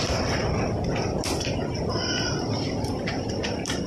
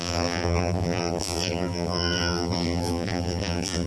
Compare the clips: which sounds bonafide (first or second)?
first